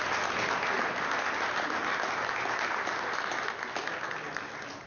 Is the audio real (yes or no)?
yes